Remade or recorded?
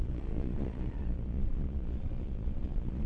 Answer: remade